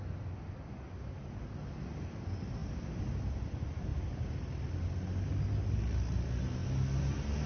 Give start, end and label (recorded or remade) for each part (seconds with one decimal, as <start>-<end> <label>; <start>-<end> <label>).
0.0-7.5 recorded